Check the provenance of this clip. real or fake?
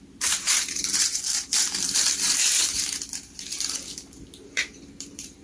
fake